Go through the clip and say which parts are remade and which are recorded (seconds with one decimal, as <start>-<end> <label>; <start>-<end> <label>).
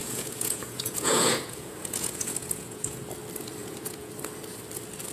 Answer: 0.0-3.1 remade; 3.1-3.6 recorded; 3.6-4.1 remade; 4.1-5.1 recorded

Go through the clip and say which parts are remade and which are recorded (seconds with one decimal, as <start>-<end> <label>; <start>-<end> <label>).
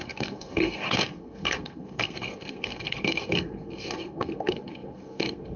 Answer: 0.0-5.6 remade